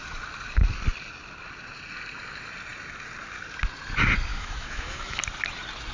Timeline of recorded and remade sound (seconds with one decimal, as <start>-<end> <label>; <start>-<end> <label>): 0.0-4.3 recorded; 4.3-5.2 remade; 5.2-5.9 recorded